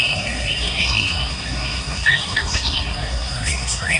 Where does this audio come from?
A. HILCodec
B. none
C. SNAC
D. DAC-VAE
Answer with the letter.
C